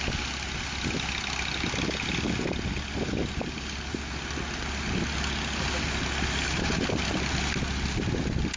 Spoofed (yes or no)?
no